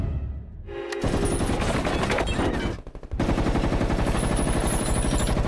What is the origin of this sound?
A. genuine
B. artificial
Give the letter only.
A